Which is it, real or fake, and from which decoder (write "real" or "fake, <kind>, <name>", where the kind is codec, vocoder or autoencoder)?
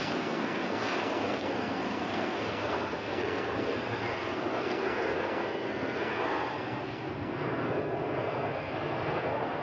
fake, codec, SNAC